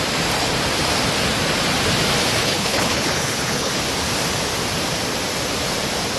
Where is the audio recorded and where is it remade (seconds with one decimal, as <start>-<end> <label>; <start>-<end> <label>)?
0.0-2.4 recorded; 2.4-3.8 remade; 3.8-6.2 recorded